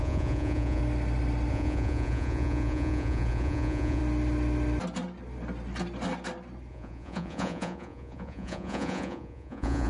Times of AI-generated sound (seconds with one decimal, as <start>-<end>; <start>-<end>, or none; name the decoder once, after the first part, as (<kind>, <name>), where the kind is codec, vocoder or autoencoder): 0.0-0.8 (vocoder, Vocos); 1.5-4.0; 6.7-9.9